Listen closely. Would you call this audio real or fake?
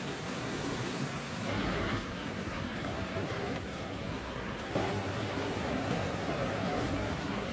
fake